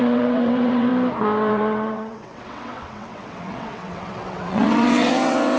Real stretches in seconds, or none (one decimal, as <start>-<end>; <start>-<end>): 0.9-1.5